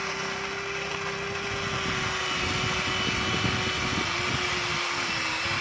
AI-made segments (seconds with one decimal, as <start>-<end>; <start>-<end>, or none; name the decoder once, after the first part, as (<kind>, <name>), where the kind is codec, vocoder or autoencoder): none